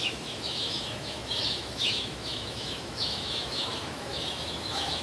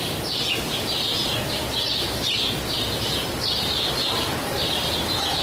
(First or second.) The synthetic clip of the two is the first